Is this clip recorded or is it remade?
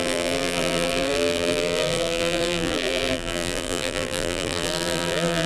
remade